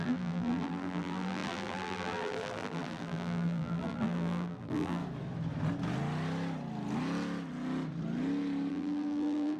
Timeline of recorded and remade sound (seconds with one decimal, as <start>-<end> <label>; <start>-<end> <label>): 0.0-5.0 remade; 5.0-8.7 recorded; 8.7-9.6 remade